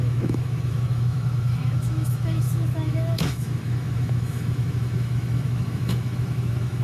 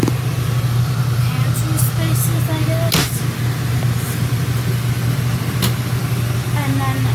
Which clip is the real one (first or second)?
second